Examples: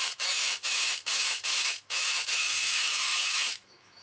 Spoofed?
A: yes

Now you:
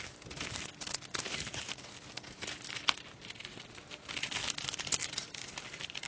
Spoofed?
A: no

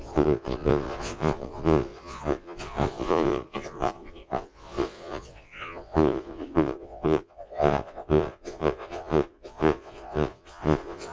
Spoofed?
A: yes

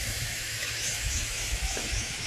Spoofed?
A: yes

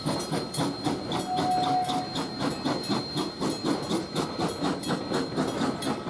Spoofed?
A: no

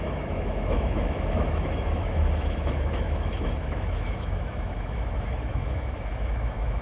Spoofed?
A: yes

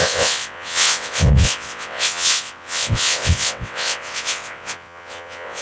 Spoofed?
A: yes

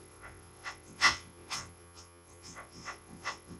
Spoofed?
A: yes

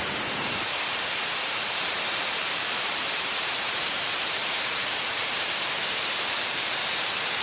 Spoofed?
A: yes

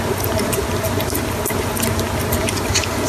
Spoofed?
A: no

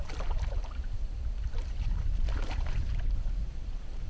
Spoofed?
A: yes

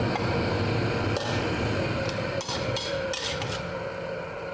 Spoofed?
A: no